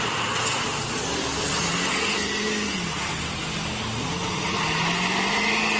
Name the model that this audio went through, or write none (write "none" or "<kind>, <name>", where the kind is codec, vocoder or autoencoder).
none